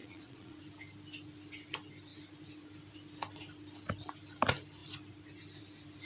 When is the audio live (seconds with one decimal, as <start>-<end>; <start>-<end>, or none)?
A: 0.6-6.1